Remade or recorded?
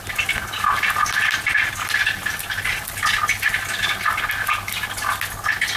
recorded